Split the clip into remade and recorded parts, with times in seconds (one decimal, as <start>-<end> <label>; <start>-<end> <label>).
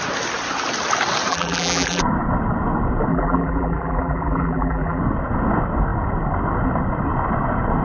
0.0-1.3 recorded; 1.3-2.0 remade; 2.0-3.1 recorded; 3.1-5.0 remade; 5.0-7.8 recorded